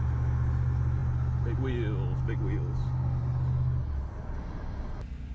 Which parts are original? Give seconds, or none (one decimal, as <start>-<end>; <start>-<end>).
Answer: 0.0-5.3